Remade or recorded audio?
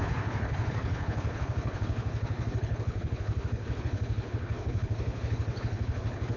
remade